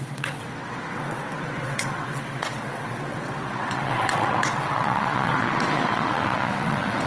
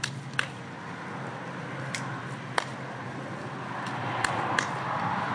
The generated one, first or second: first